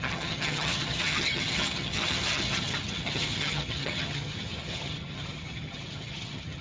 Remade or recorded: remade